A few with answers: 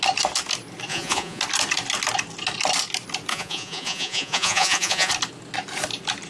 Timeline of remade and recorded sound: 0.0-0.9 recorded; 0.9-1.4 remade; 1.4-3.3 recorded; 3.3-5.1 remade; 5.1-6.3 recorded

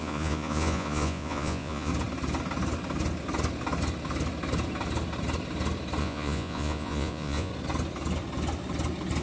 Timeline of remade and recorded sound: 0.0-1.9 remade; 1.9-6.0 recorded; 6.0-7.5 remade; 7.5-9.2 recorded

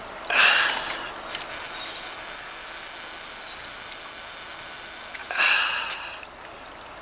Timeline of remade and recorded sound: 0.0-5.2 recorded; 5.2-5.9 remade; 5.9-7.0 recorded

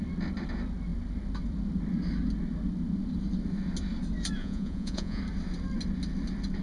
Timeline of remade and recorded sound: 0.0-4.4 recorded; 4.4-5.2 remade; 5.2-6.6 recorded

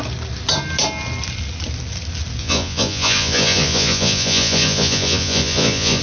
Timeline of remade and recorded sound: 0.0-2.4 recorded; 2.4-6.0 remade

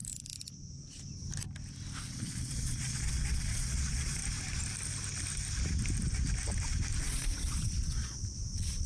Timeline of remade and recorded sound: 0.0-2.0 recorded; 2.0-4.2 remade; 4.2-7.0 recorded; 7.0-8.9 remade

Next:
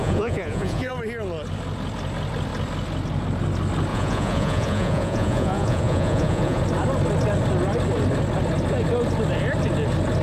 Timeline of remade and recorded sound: 0.0-0.9 remade; 0.9-3.9 recorded; 3.9-6.6 remade; 6.6-10.2 recorded

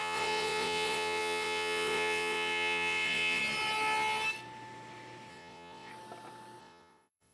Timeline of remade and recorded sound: 0.0-3.4 remade; 3.4-5.3 recorded; 5.3-5.9 remade; 5.9-6.6 recorded; 6.6-7.3 remade